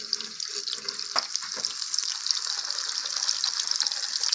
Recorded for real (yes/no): yes